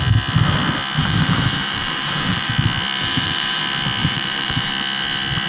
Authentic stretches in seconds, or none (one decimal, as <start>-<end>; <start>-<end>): 0.0-1.0; 2.5-3.0; 3.6-4.0; 4.7-5.5